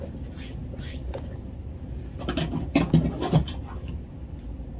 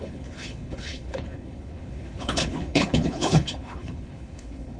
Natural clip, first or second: first